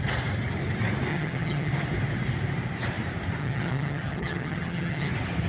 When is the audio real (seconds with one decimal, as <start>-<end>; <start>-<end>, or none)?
0.0-1.1; 1.7-3.4; 5.1-5.5